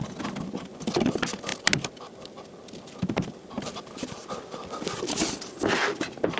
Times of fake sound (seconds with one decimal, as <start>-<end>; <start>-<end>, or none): none